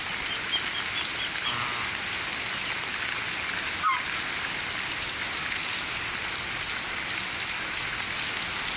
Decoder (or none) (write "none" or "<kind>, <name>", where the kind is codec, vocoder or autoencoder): none